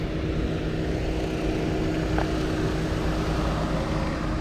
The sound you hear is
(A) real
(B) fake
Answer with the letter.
A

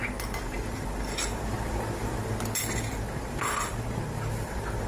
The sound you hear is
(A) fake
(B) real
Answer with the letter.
B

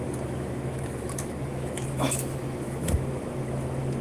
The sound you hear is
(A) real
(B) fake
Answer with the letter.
B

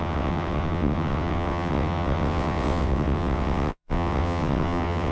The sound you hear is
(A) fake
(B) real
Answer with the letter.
A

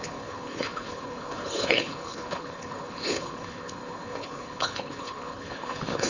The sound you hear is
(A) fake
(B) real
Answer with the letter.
A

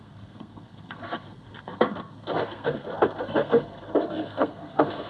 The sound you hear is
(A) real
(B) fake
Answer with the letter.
B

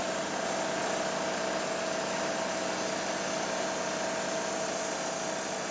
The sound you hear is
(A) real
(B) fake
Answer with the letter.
A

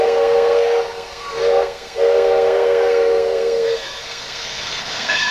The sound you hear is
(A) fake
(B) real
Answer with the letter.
A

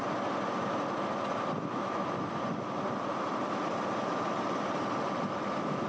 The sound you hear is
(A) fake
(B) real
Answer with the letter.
B